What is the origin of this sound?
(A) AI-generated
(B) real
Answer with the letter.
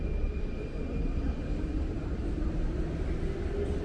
B